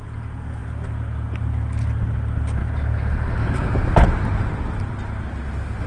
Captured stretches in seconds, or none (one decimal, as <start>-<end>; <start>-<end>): 0.0-5.9